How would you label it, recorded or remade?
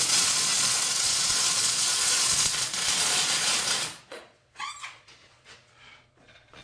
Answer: remade